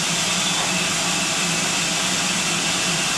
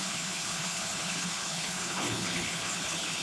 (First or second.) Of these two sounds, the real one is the first